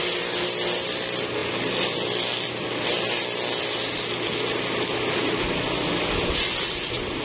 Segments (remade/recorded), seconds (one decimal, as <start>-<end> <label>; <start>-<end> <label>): 0.0-7.2 recorded